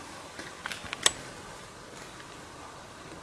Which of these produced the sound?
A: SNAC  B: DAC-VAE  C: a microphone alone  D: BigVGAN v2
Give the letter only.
C